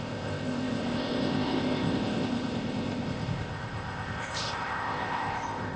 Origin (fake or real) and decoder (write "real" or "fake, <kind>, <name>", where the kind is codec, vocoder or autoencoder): fake, codec, ZipCodec